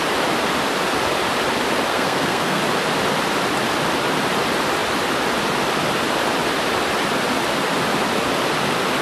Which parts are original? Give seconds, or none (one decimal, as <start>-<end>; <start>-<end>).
0.0-1.9; 2.6-9.0